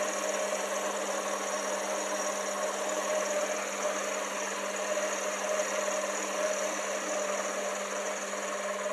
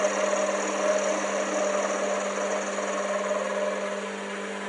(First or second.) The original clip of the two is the second